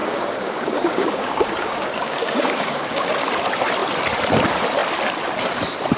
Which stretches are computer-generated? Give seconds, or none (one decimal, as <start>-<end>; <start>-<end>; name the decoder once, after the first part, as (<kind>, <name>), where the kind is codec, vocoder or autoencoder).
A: 0.0-3.1 (codec, DAC)